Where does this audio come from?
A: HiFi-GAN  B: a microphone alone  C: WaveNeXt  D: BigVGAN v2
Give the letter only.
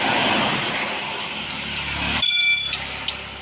B